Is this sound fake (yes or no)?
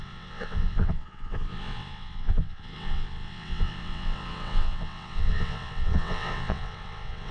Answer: yes